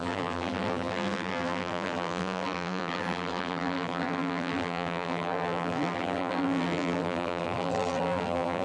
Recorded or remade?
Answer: remade